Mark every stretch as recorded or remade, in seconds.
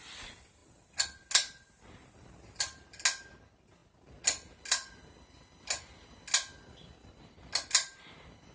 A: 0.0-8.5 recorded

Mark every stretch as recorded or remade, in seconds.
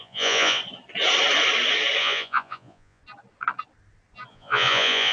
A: 0.0-0.6 remade; 0.6-2.0 recorded; 2.0-3.0 remade; 3.0-4.3 recorded; 4.3-5.1 remade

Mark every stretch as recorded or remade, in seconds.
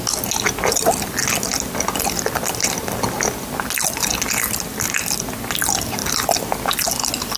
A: 0.0-7.4 recorded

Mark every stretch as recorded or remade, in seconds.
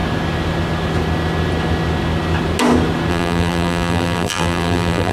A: 0.0-3.1 recorded; 3.1-5.1 remade